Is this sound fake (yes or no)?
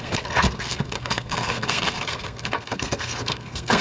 yes